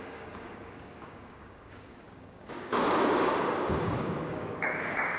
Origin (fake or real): fake